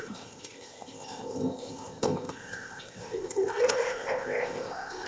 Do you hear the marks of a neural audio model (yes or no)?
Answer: yes